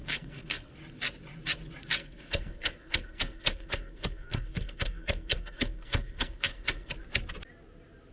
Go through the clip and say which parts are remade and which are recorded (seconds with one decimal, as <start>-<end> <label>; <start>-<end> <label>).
0.0-0.7 remade; 0.7-2.0 recorded; 2.0-6.9 remade; 6.9-8.1 recorded